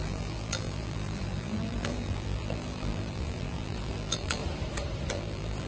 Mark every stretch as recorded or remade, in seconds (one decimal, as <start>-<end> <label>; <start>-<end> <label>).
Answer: 0.0-4.4 remade; 4.4-5.1 recorded; 5.1-5.7 remade